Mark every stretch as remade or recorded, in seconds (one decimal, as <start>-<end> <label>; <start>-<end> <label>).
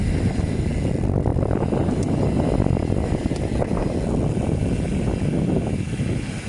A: 0.0-6.5 recorded